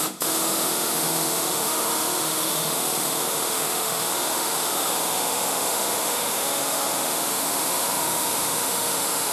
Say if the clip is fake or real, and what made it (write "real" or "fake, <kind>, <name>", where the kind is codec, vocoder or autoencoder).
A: fake, autoencoder, DAC-VAE